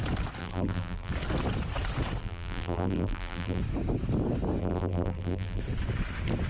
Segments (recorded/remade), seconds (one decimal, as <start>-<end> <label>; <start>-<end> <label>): 0.0-0.4 recorded; 0.4-1.1 remade; 1.1-2.2 recorded; 2.2-3.6 remade; 3.6-4.6 recorded; 4.6-5.6 remade; 5.6-6.5 recorded